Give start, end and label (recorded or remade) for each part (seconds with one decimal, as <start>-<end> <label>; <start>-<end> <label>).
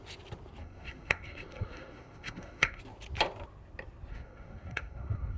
0.0-0.6 recorded; 0.6-2.8 remade; 2.8-4.1 recorded; 4.1-5.4 remade